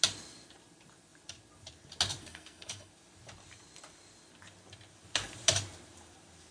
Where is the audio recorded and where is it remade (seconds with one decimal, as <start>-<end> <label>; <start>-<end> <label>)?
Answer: 0.0-2.2 recorded; 2.2-2.9 remade; 2.9-6.5 recorded